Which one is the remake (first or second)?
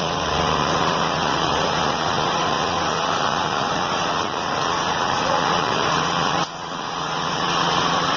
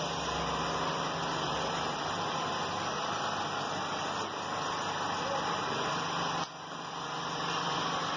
first